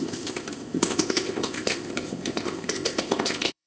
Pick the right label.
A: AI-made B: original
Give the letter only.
A